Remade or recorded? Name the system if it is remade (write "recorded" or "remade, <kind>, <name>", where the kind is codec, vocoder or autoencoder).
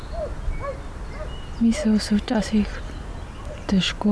recorded